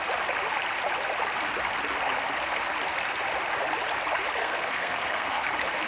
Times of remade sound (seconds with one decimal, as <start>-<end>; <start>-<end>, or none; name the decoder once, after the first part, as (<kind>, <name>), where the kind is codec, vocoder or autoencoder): 4.4-5.5 (codec, SNAC)